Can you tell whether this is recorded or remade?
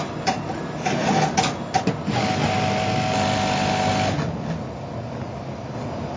recorded